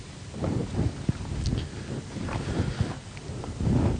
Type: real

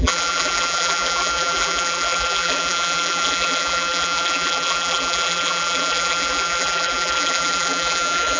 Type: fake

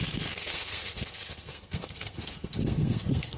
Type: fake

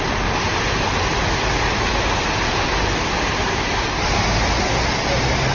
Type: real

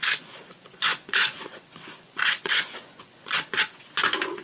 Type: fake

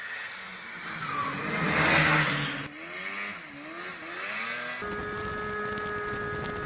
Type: real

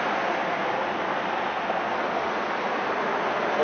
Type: real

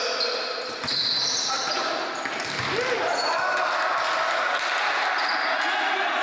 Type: real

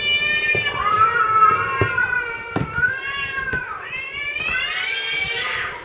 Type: fake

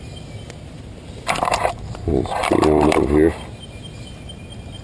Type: fake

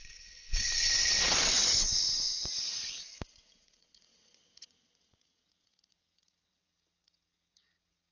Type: fake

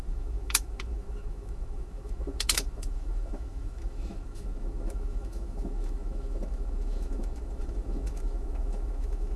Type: fake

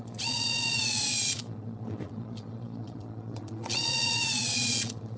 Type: fake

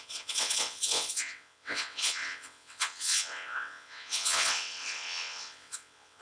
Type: fake